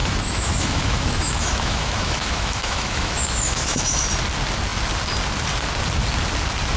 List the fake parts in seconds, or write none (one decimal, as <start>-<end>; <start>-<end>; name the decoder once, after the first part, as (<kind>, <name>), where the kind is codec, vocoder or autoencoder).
0.0-4.1 (autoencoder, DAC-VAE)